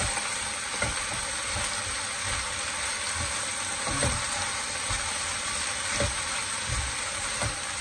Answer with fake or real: real